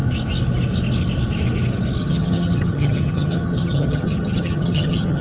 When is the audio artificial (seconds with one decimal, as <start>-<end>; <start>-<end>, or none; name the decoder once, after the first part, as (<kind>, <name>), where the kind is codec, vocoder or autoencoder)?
2.0-5.2 (vocoder, HiFi-GAN)